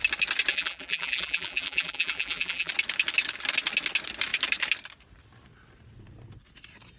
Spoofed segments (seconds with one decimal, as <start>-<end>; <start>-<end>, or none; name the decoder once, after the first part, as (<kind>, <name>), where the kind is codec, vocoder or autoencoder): 0.5-2.7 (vocoder, BigVGAN v2)